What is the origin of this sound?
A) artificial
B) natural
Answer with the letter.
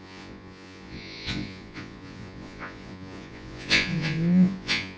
A